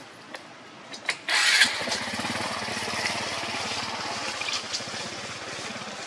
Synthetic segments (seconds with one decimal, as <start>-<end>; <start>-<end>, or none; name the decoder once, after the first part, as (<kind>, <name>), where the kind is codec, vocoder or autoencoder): 1.4-2.7 (vocoder, Vocos); 4.7-5.5